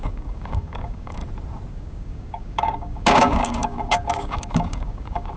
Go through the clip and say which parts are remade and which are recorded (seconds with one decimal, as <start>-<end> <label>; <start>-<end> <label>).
0.0-1.2 remade; 1.2-1.7 recorded; 1.7-5.4 remade